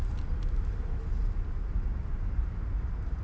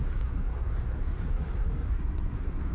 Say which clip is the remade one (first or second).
second